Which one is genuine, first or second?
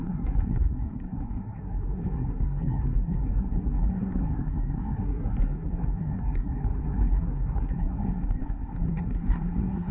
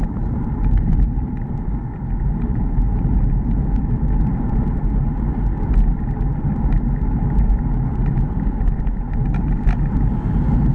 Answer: second